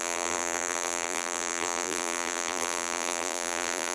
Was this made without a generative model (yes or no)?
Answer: no